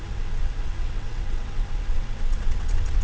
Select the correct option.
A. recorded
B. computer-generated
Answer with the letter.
B